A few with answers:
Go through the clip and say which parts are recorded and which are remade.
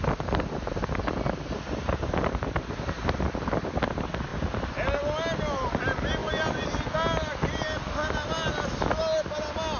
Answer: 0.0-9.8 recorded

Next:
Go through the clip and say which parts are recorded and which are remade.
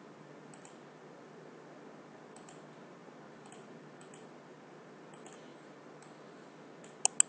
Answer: 0.0-7.3 recorded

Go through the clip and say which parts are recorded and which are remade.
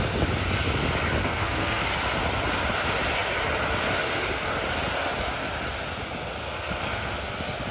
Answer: 0.0-1.2 recorded; 1.2-1.8 remade; 1.8-6.4 recorded; 6.4-7.3 remade; 7.3-7.7 recorded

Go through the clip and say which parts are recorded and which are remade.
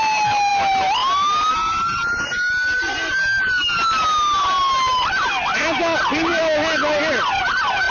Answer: 0.0-7.9 recorded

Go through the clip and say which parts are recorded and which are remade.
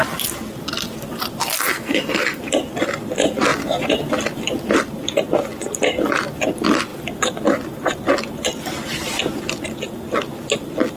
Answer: 0.0-1.7 recorded; 1.7-2.4 remade; 2.4-11.0 recorded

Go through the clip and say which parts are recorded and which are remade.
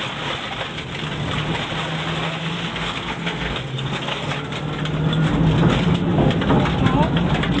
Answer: 0.0-2.4 recorded; 2.4-4.3 remade; 4.3-7.6 recorded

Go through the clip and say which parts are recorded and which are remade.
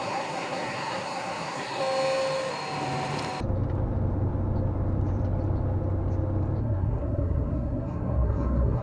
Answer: 0.0-1.8 remade; 1.8-6.6 recorded; 6.6-8.8 remade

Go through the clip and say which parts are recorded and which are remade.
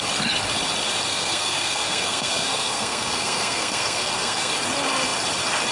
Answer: 0.0-1.1 recorded; 1.1-4.5 remade; 4.5-5.7 recorded